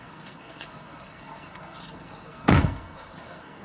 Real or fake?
fake